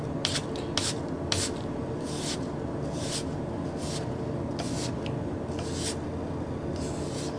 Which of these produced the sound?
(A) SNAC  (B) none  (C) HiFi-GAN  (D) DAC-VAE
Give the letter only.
B